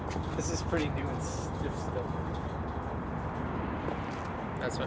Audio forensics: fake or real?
fake